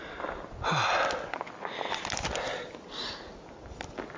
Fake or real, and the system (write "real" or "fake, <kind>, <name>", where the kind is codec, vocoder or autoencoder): real